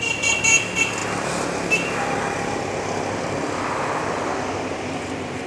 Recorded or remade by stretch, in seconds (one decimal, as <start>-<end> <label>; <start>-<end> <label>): 0.0-5.5 recorded